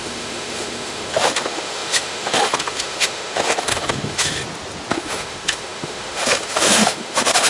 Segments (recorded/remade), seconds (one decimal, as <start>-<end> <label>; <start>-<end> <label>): 0.0-4.4 remade; 4.4-4.9 recorded; 4.9-7.5 remade